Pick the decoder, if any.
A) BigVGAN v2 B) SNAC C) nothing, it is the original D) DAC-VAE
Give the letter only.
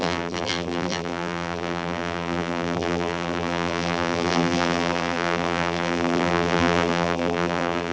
A